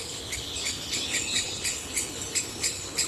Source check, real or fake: fake